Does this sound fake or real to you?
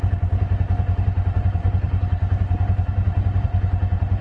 real